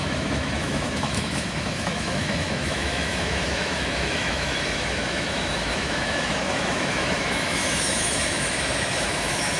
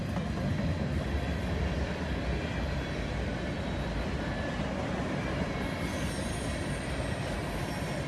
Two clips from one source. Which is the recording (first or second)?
second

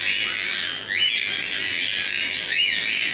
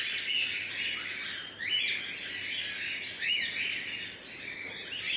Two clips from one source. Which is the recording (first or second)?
second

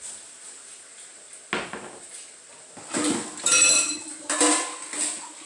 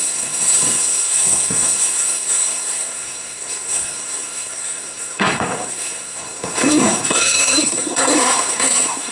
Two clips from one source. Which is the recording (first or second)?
first